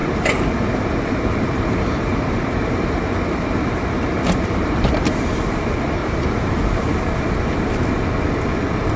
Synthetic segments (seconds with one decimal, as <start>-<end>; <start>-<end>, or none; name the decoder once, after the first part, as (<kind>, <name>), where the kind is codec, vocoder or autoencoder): 0.0-5.1 (vocoder, BigVGAN v2); 6.0-7.2